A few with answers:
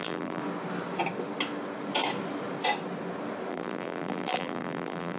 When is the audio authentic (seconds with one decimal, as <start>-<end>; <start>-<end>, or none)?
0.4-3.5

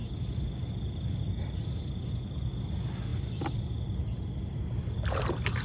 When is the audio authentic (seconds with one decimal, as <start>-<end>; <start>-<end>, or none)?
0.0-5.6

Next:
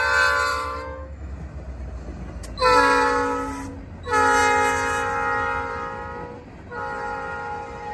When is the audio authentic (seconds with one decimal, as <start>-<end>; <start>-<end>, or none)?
0.0-0.5; 1.3-7.9

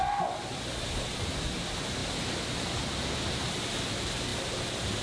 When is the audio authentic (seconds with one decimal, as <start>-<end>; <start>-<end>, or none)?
0.0-5.0